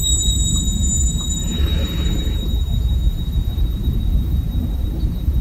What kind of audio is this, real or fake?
fake